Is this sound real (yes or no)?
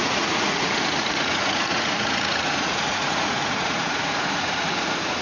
no